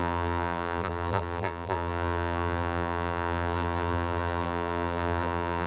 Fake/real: fake